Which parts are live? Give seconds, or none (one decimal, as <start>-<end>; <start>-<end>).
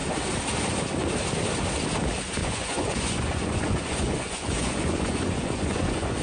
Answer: 0.0-2.4